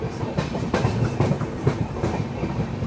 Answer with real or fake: real